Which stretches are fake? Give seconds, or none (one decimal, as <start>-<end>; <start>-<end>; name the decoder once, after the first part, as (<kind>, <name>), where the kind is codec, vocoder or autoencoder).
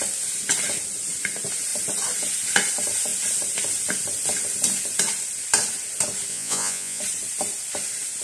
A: 6.3-7.0 (vocoder, Vocos)